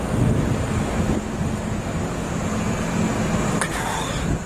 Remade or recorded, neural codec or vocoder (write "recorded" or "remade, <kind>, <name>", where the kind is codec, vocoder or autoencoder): recorded